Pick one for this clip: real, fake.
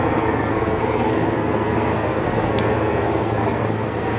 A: fake